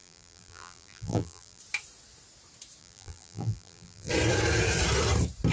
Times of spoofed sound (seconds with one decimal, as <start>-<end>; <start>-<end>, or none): 0.0-1.6; 2.8-4.1